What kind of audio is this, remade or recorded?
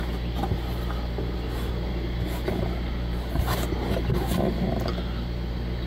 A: recorded